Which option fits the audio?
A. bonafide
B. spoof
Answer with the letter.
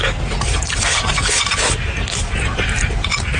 A